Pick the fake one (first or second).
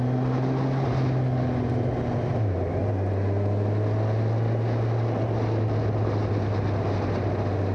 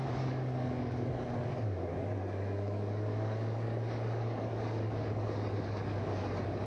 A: second